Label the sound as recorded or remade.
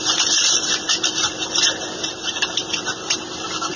remade